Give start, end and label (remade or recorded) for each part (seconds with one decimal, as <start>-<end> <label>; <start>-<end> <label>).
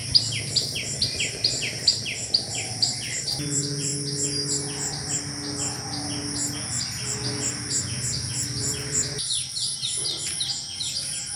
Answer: 0.0-1.5 recorded; 1.5-1.9 remade; 1.9-2.5 recorded; 2.5-3.9 remade; 3.9-8.6 recorded; 8.6-11.4 remade